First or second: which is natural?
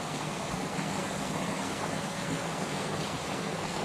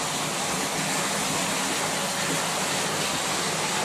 second